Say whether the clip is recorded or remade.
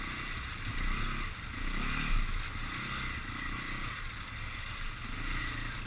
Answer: recorded